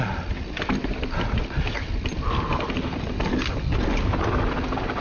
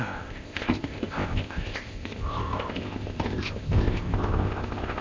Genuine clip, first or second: first